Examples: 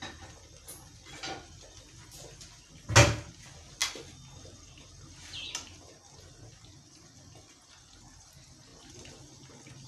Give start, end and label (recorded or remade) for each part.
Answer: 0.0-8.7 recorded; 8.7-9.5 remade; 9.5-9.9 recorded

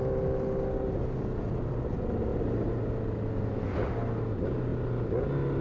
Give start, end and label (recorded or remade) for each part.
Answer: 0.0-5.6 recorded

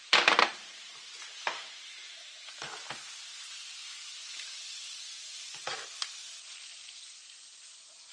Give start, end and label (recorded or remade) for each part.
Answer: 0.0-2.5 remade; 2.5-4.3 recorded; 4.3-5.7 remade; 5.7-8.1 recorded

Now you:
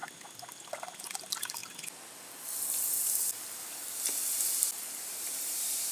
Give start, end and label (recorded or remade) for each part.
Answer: 0.0-0.7 recorded; 0.7-1.6 remade; 1.6-5.1 recorded; 5.1-5.9 remade

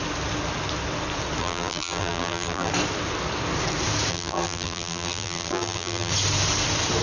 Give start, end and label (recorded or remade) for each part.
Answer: 0.0-1.4 recorded; 1.4-2.7 remade; 2.7-4.1 recorded; 4.1-6.1 remade; 6.1-7.0 recorded

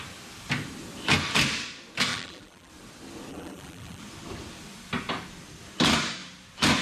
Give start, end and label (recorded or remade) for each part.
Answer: 0.0-2.1 recorded; 2.1-2.7 remade; 2.7-3.3 recorded; 3.3-4.0 remade; 4.0-6.8 recorded

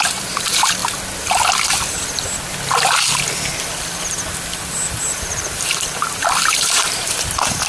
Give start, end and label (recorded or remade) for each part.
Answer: 0.0-0.8 remade; 0.8-5.0 recorded; 5.0-7.7 remade

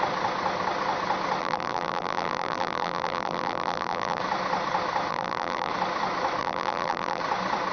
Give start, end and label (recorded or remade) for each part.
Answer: 0.0-1.4 recorded; 1.4-4.2 remade; 4.2-5.1 recorded; 5.1-5.7 remade; 5.7-6.4 recorded; 6.4-7.2 remade; 7.2-7.7 recorded